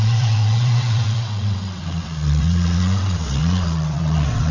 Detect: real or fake fake